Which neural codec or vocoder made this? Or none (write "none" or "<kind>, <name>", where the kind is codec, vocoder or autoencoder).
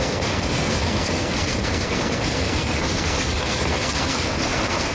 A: codec, SNAC